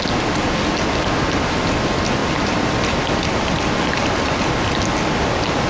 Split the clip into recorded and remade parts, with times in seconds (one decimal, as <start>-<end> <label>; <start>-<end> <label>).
0.0-5.7 recorded